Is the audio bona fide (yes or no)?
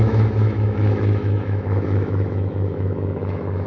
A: no